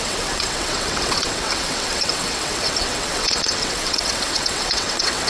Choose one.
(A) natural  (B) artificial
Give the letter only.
B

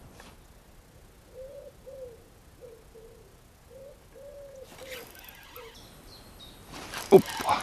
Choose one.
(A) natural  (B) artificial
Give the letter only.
A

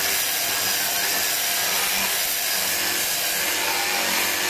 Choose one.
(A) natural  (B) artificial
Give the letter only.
A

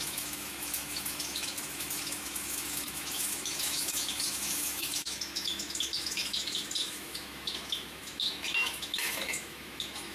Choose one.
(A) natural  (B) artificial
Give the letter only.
B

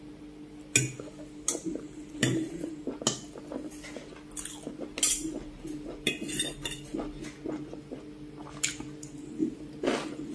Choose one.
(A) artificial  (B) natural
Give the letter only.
B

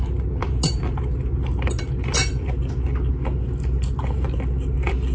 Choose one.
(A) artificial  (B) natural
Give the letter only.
B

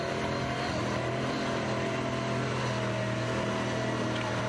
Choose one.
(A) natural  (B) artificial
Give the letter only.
B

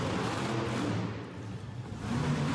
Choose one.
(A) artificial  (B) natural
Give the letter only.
B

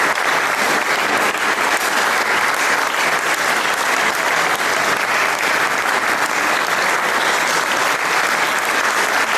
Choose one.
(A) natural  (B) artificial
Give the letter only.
A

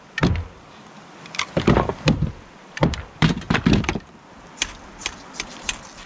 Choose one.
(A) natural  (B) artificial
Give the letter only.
B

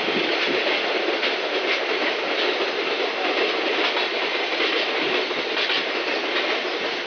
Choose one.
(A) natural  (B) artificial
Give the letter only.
A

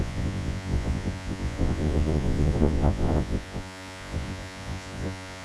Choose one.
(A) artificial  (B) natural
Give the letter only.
A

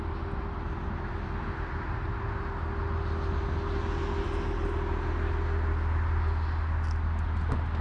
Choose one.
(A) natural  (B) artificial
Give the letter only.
A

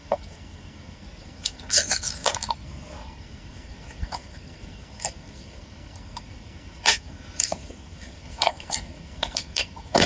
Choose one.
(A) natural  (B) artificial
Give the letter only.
B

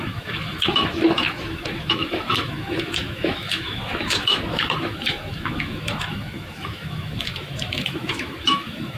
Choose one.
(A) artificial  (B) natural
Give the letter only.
A